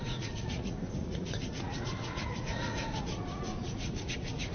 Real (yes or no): no